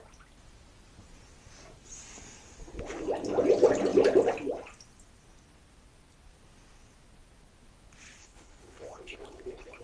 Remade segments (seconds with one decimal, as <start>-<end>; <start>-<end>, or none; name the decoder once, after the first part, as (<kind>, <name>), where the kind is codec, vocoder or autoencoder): 8.2-9.8 (codec, HILCodec)